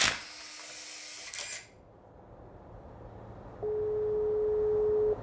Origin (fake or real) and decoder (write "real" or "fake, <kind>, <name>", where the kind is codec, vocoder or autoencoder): real